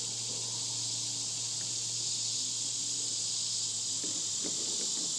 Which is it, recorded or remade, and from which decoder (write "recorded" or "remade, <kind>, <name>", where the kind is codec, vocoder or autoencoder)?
recorded